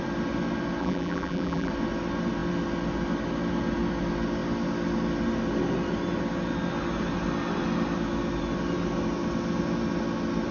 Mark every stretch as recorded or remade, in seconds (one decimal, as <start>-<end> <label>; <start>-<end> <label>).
0.0-0.8 recorded; 0.8-1.7 remade; 1.7-10.5 recorded